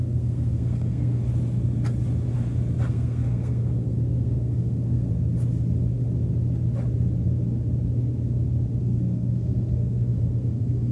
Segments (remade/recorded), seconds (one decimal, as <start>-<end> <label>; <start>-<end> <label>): 0.0-1.2 remade; 1.2-2.9 recorded; 2.9-5.1 remade; 5.1-8.8 recorded; 8.8-10.9 remade